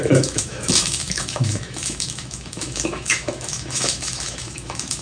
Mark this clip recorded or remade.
remade